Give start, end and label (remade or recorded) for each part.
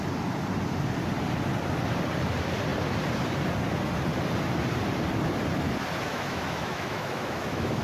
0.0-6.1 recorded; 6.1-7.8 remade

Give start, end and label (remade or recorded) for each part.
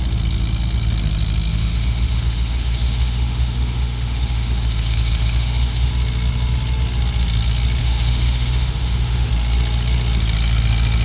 0.0-1.5 recorded; 1.5-5.9 remade; 5.9-7.8 recorded; 7.8-9.3 remade; 9.3-11.0 recorded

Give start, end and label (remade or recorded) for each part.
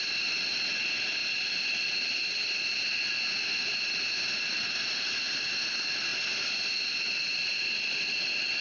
0.0-8.6 recorded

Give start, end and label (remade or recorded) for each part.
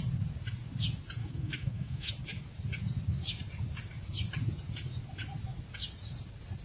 0.0-1.2 recorded; 1.2-2.1 remade; 2.1-6.6 recorded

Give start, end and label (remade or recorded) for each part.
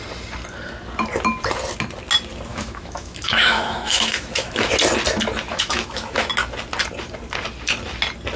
0.0-2.5 recorded; 2.5-4.7 remade; 4.7-5.5 recorded; 5.5-6.3 remade; 6.3-8.4 recorded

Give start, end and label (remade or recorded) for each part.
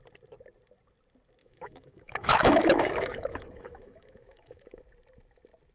0.0-1.4 recorded; 1.4-4.8 remade; 4.8-5.7 recorded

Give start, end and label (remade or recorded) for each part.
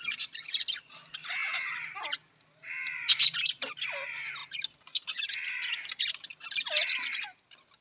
0.0-7.8 recorded